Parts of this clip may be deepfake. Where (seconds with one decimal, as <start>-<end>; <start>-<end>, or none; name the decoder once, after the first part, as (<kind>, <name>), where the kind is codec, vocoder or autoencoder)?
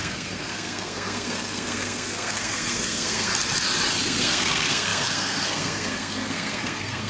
0.0-3.3 (codec, SNAC); 4.0-7.1